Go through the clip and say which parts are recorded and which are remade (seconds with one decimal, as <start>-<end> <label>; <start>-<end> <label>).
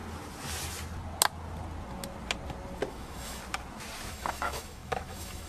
0.0-2.9 recorded; 2.9-3.4 remade; 3.4-4.1 recorded; 4.1-5.5 remade